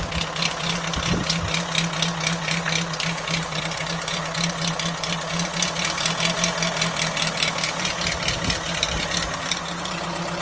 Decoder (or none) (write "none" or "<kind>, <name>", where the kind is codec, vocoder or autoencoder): none